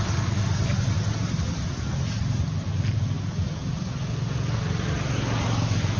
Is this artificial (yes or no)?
no